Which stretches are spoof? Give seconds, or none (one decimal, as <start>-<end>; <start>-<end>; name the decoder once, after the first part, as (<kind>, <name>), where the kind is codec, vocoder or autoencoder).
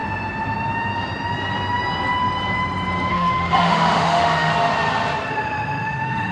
3.1-4.5 (autoencoder, DAC-VAE); 5.3-6.3